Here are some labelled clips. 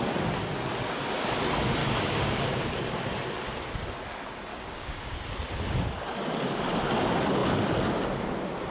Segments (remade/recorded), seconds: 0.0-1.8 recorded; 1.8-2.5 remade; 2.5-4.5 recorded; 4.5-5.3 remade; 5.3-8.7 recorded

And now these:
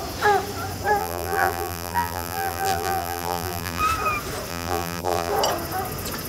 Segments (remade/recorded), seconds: 0.0-1.0 recorded; 1.0-3.8 remade; 3.8-4.5 recorded; 4.5-5.3 remade; 5.3-6.3 recorded

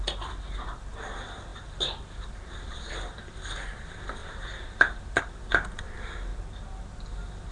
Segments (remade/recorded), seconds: 0.0-4.2 recorded; 4.2-5.2 remade; 5.2-6.3 recorded; 6.3-6.9 remade; 6.9-7.5 recorded